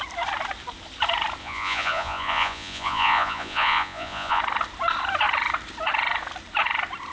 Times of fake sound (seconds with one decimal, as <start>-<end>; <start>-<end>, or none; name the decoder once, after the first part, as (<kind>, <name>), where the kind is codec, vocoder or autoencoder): 1.4-4.4 (vocoder, Vocos)